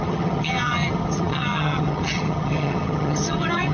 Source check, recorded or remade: remade